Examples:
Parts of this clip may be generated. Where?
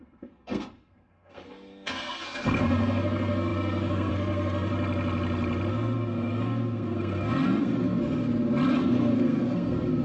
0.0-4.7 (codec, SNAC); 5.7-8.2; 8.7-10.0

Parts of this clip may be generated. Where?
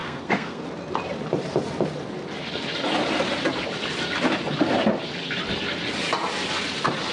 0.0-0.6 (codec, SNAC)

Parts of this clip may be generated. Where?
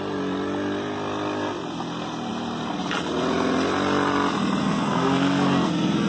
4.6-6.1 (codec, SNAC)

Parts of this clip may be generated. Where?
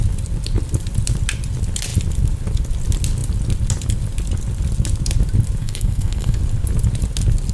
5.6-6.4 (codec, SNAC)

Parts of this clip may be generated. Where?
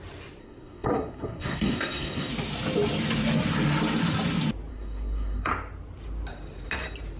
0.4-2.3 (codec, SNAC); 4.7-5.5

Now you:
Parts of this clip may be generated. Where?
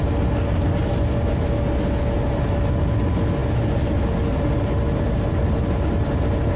none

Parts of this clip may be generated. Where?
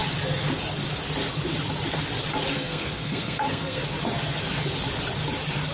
2.5-3.8 (codec, SNAC)